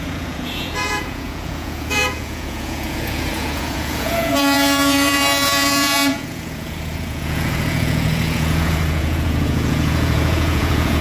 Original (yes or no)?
no